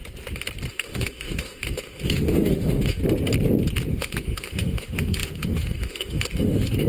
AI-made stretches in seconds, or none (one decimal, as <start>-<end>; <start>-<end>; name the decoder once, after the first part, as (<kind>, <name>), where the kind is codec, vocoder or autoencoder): 0.7-3.0 (autoencoder, DAC-VAE); 3.9-6.9